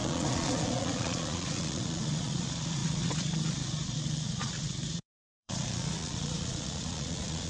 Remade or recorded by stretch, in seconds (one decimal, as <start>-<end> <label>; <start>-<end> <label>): 0.0-7.5 remade